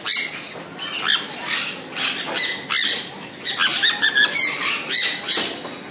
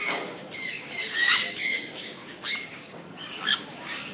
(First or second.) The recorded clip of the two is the first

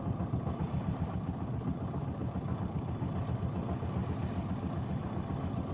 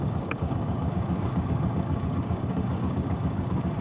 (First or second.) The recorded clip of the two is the first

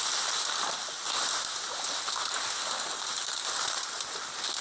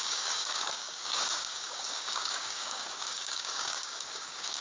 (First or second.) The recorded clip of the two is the first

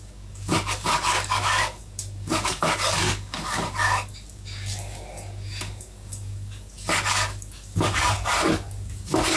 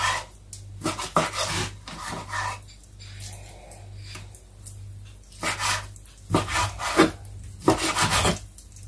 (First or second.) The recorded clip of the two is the second